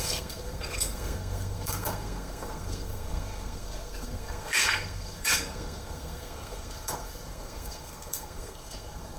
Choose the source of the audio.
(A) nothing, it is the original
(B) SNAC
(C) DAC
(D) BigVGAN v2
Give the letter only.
B